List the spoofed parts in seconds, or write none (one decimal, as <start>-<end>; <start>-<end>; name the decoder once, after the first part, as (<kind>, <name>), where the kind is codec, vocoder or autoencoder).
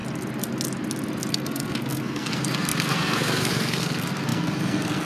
1.3-5.0 (codec, SNAC)